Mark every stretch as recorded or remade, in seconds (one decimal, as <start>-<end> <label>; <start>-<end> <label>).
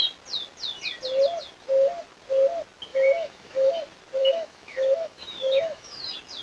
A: 0.0-2.9 recorded; 2.9-3.7 remade; 3.7-4.2 recorded; 4.2-6.0 remade; 6.0-6.4 recorded